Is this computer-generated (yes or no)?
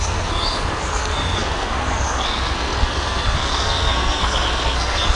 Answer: yes